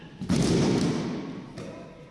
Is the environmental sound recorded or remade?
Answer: recorded